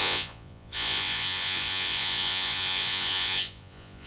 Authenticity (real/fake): fake